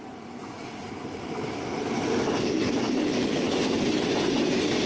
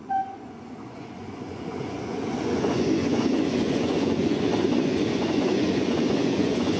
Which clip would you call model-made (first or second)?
second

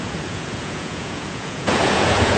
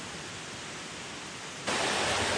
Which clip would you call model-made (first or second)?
first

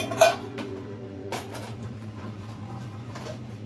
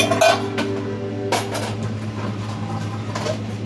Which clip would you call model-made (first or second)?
first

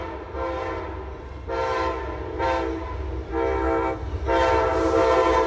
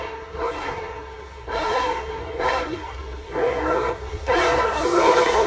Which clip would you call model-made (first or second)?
second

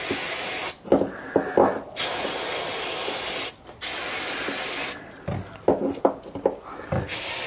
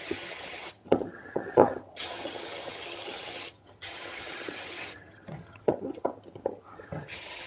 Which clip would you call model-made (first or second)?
second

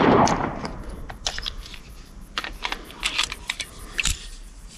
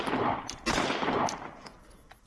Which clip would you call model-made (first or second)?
first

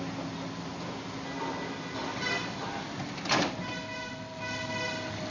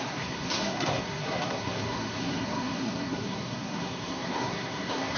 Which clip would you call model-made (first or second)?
second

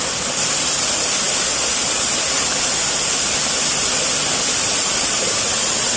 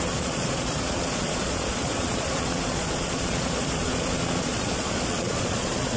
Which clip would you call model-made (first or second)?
second